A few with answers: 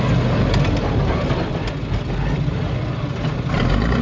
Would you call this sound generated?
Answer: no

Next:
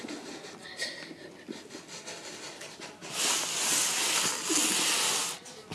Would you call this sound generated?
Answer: no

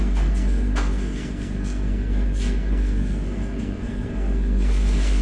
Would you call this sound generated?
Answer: yes